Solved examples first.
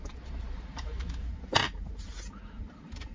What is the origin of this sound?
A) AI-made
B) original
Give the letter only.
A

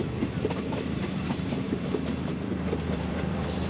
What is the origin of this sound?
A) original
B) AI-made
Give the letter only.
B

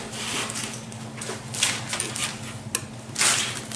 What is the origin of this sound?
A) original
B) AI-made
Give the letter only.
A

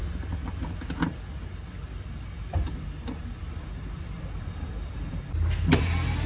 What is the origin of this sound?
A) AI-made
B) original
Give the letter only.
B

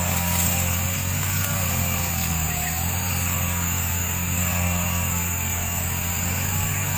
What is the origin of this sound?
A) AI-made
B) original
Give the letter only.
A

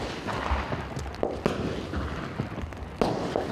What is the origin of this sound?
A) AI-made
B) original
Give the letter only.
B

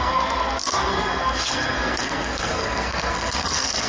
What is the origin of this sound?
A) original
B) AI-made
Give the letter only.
B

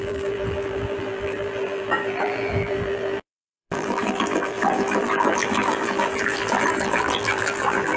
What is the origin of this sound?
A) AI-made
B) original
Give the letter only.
A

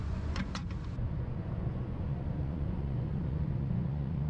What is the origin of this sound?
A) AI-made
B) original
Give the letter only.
A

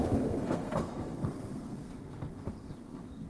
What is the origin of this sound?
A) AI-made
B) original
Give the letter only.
A